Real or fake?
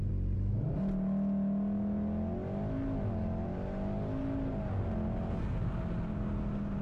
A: real